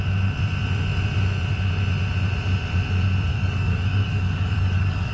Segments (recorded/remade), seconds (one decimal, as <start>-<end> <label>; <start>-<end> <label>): 0.0-3.3 recorded; 3.3-5.1 remade